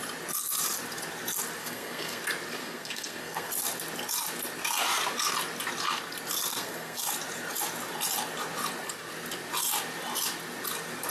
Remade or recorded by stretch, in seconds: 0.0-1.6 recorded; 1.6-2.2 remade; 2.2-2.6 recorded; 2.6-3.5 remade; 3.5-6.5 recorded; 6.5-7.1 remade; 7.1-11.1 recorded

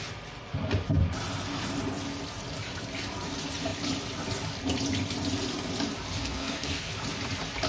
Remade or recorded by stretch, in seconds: 0.0-6.2 recorded; 6.2-6.9 remade; 6.9-7.7 recorded

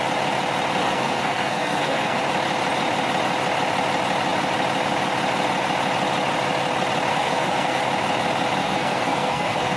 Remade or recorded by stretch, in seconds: 0.0-0.8 recorded; 0.8-2.2 remade; 2.2-7.1 recorded; 7.1-7.8 remade; 7.8-8.6 recorded; 8.6-9.8 remade

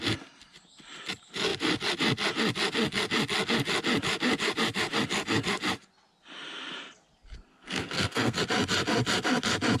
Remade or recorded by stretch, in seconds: 0.0-7.5 recorded; 7.5-8.4 remade; 8.4-9.8 recorded

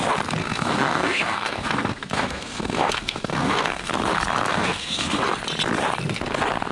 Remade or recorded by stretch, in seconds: 0.0-0.4 recorded; 0.4-3.9 remade; 3.9-4.5 recorded; 4.5-5.2 remade; 5.2-6.7 recorded

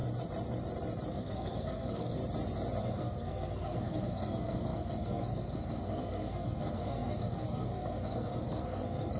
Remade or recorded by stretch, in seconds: 0.0-1.1 recorded; 1.1-2.2 remade; 2.2-2.8 recorded; 2.8-9.2 remade